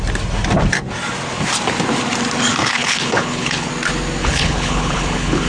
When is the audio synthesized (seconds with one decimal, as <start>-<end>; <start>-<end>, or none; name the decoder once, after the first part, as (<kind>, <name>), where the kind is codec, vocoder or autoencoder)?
2.6-3.7 (codec, HILCodec); 4.2-5.5